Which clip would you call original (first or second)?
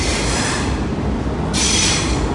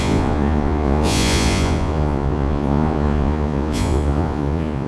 first